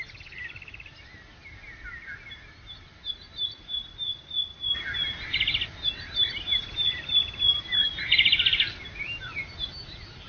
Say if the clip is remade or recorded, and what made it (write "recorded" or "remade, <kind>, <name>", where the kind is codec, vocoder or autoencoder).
recorded